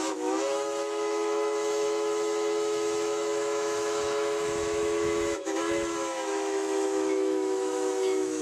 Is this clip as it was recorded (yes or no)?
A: no